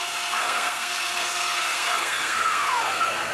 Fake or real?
fake